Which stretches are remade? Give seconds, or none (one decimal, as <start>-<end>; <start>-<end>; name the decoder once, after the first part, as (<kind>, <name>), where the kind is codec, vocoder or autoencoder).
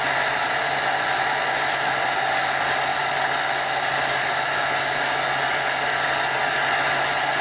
none